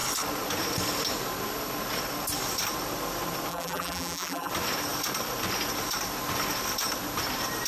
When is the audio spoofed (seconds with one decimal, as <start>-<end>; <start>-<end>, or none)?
3.5-4.5